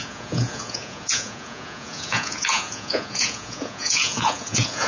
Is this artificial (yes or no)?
yes